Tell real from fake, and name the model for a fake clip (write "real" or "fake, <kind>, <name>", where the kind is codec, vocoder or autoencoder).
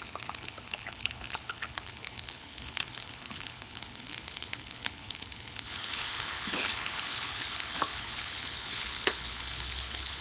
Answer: fake, codec, HILCodec